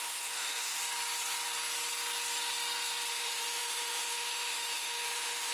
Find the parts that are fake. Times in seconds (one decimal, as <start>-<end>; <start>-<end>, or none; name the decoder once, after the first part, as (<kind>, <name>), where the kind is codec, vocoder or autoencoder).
0.0-0.8 (autoencoder, DAC-VAE); 3.1-5.5